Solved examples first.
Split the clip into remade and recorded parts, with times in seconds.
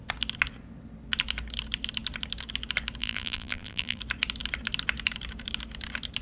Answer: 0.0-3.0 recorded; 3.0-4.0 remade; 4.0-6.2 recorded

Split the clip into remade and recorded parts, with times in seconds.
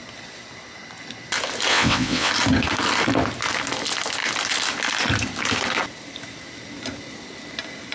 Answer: 0.0-1.7 recorded; 1.7-2.3 remade; 2.3-7.9 recorded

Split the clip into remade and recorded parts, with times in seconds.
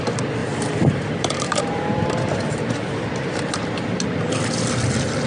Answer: 0.0-0.4 recorded; 0.4-3.6 remade; 3.6-5.3 recorded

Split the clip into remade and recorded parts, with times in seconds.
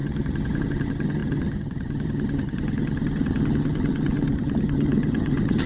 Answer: 0.0-5.7 remade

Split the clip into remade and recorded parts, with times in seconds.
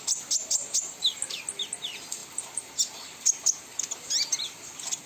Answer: 0.0-5.1 recorded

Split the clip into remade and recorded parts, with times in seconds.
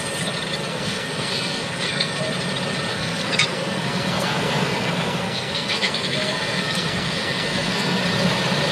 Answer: 0.0-0.6 recorded; 0.6-2.2 remade; 2.2-2.9 recorded; 2.9-8.0 remade; 8.0-8.7 recorded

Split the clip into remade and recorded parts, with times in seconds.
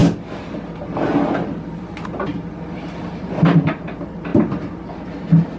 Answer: 0.0-2.3 recorded; 2.3-3.7 remade; 3.7-5.6 recorded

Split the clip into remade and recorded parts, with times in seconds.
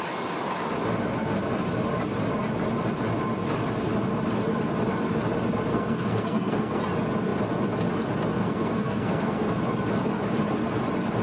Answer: 0.0-5.7 recorded; 5.7-6.8 remade; 6.8-8.4 recorded; 8.4-9.6 remade; 9.6-11.2 recorded